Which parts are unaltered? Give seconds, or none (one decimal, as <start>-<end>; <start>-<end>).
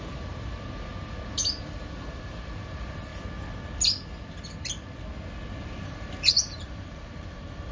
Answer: 0.9-1.6; 3.1-5.6